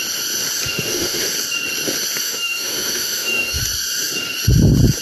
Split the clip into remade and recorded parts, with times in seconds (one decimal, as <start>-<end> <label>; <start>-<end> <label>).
0.0-0.7 recorded; 0.7-1.3 remade; 1.3-2.2 recorded; 2.2-3.6 remade; 3.6-5.0 recorded